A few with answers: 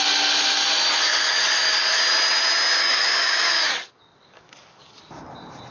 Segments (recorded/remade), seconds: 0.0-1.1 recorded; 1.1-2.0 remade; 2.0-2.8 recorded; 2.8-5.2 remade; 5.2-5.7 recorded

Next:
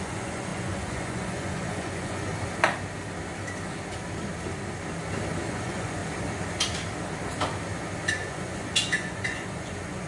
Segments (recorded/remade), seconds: 0.0-2.3 remade; 2.3-5.5 recorded; 5.5-6.0 remade; 6.0-8.1 recorded; 8.1-10.1 remade

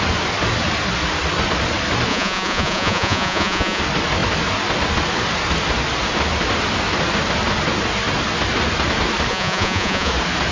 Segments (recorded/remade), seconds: 0.0-2.1 recorded; 2.1-3.8 remade; 3.8-9.3 recorded; 9.3-10.1 remade; 10.1-10.5 recorded

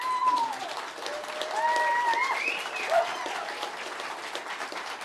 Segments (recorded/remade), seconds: 0.0-1.1 remade; 1.1-4.1 recorded; 4.1-5.0 remade

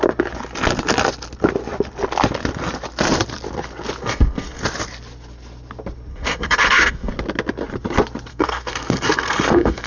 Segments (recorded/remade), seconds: 0.0-4.0 recorded; 4.0-4.6 remade; 4.6-6.1 recorded; 6.1-7.1 remade; 7.1-8.3 recorded; 8.3-9.9 remade

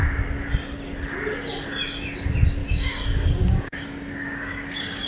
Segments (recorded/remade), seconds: 0.0-2.6 recorded; 2.6-5.1 remade